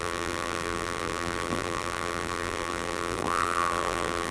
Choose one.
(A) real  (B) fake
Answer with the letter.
B